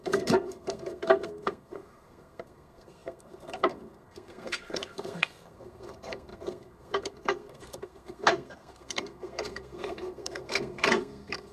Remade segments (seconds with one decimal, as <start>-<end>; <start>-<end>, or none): 0.0-11.5